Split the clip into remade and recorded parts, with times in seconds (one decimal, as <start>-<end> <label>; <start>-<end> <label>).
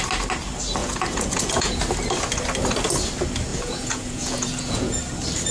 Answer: 0.0-0.8 recorded; 0.8-1.8 remade; 1.8-3.5 recorded; 3.5-5.0 remade; 5.0-5.5 recorded